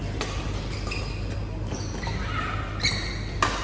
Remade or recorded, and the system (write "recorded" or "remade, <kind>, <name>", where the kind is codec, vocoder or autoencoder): recorded